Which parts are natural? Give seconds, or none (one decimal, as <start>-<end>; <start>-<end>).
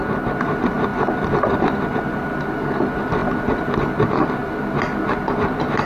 0.0-5.9